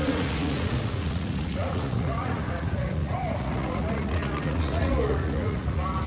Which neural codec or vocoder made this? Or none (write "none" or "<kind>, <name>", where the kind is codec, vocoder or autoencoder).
vocoder, Vocos